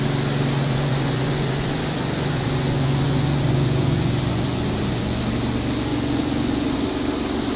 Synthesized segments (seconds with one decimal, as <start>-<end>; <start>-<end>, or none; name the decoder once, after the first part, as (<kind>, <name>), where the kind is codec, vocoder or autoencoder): 0.6-5.2 (vocoder, Vocos); 5.9-6.9